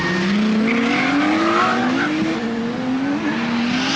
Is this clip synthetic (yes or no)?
no